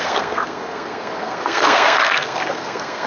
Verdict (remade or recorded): remade